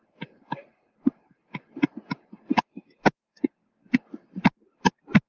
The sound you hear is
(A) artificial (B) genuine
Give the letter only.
B